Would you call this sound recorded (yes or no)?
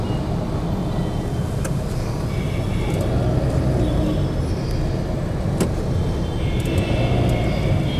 yes